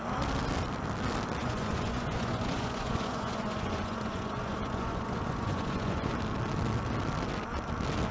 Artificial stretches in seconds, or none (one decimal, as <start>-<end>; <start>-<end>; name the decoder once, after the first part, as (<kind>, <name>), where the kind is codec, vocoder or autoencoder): 1.4-6.1 (vocoder, Vocos)